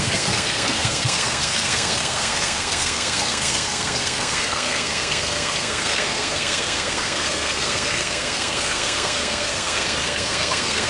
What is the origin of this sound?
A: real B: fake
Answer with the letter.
B